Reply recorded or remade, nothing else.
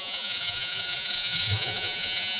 remade